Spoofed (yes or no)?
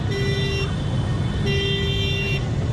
no